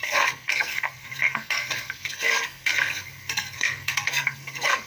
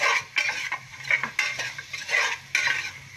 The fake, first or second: first